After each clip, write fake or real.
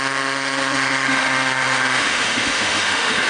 fake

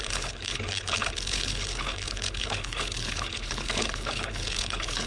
fake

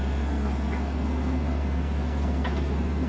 fake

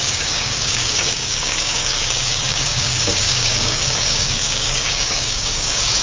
fake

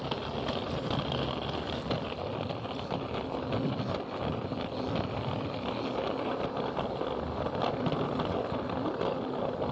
real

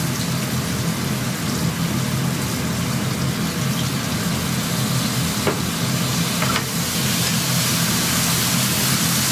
real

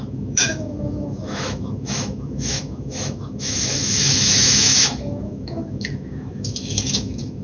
fake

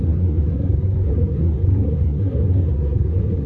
fake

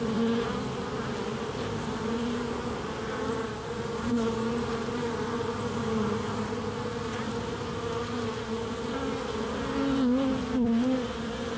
real